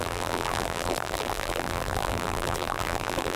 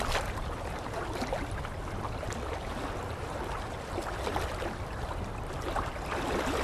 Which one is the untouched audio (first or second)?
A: second